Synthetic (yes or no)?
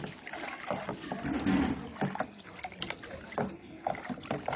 no